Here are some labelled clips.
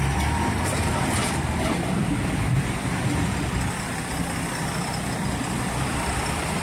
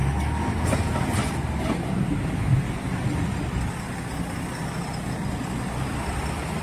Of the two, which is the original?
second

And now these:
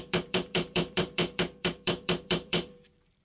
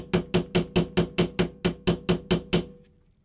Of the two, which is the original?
second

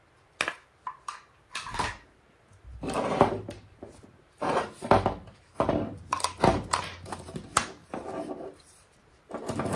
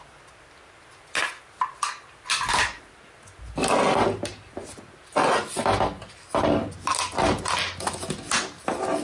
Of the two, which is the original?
second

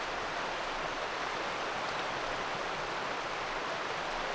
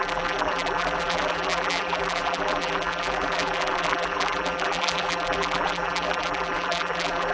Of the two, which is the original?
first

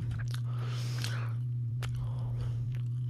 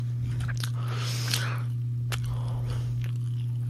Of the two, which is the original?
second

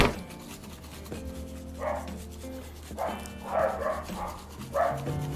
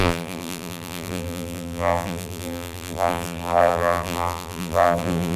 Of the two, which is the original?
first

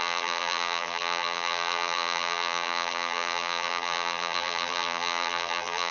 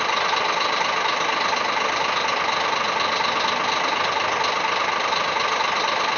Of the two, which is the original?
second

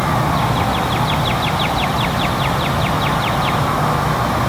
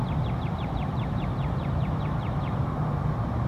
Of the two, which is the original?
first